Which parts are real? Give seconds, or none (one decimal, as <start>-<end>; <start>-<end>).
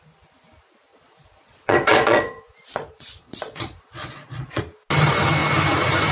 0.0-0.9; 4.6-6.1